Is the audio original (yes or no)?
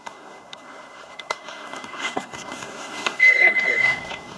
no